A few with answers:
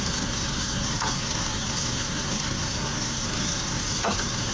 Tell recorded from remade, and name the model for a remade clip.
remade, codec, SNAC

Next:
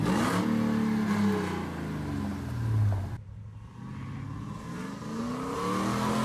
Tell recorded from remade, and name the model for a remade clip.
recorded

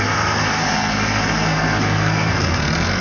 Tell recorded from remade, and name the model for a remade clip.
remade, codec, SNAC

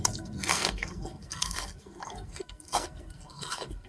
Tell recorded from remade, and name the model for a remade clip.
remade, codec, SNAC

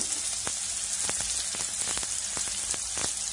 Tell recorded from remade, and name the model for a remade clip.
recorded